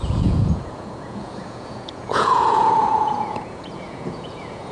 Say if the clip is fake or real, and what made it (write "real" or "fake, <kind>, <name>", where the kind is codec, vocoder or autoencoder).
fake, vocoder, Vocos